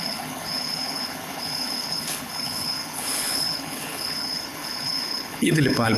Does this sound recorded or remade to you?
remade